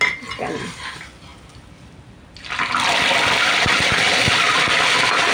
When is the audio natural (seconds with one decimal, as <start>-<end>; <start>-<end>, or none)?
0.0-5.3